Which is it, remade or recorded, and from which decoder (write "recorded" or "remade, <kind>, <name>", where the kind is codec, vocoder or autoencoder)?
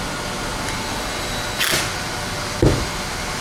recorded